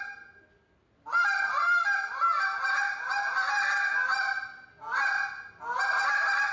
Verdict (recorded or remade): recorded